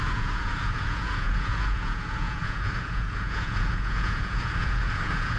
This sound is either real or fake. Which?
fake